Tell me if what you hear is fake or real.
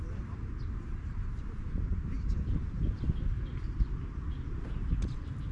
real